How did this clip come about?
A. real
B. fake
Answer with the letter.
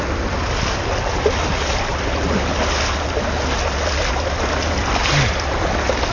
A